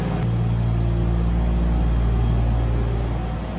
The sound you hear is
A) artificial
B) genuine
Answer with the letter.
B